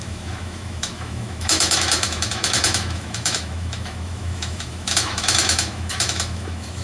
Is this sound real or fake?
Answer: fake